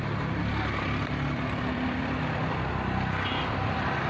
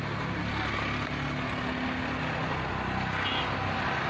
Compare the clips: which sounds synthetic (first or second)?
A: first